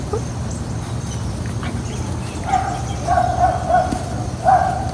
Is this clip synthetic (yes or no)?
no